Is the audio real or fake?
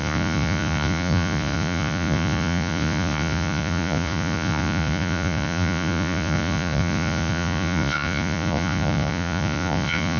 fake